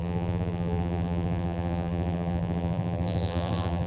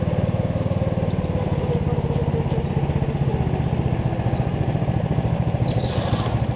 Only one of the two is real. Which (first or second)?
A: second